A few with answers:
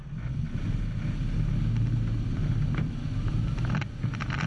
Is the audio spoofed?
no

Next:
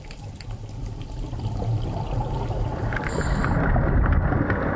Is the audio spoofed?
no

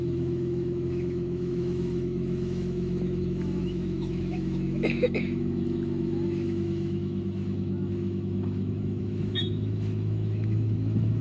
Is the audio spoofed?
yes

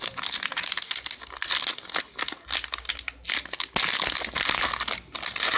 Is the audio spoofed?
no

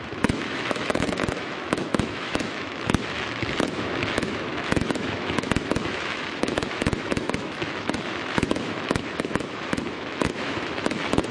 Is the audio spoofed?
yes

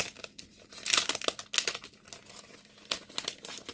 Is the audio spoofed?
no